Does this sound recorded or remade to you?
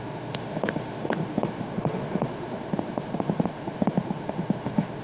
remade